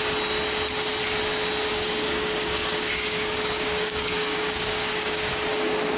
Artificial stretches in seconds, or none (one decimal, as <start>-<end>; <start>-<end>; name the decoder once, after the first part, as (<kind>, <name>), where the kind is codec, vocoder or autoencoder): 1.7-5.3 (codec, DAC)